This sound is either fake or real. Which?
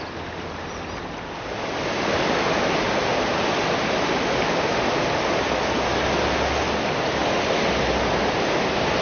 real